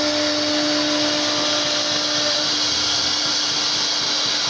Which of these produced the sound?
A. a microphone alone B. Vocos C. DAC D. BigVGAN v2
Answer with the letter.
A